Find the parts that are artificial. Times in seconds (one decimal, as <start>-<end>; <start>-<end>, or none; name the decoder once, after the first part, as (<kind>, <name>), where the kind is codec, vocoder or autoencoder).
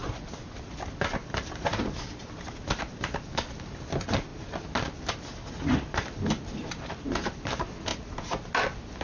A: none